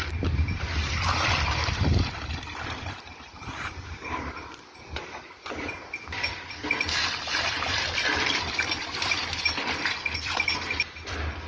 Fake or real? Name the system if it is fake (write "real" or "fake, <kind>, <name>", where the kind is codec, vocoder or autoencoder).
fake, vocoder, BigVGAN v2